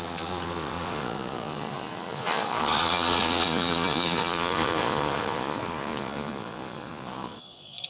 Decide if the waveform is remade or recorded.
remade